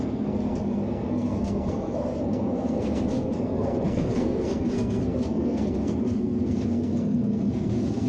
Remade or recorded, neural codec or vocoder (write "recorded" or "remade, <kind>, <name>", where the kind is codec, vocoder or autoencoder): remade, codec, SNAC